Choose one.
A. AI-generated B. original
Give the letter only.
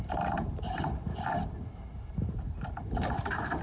A